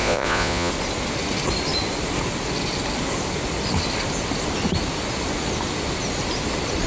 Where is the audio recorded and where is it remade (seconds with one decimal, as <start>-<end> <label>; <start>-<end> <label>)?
0.0-0.7 remade; 0.7-6.9 recorded